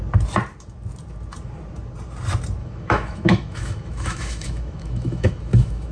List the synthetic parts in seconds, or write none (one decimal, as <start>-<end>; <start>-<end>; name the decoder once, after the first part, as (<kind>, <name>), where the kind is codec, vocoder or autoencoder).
2.6-5.9 (autoencoder, DAC-VAE)